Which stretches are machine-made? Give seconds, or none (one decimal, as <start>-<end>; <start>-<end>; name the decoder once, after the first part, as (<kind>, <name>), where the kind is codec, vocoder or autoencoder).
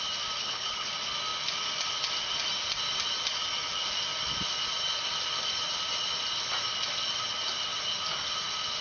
0.4-0.9 (codec, HILCodec)